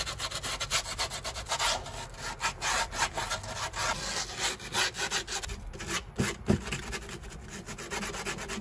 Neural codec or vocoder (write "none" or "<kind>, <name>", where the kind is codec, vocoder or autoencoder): none